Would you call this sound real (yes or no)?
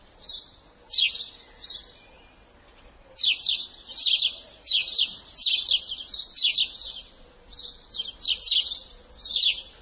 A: yes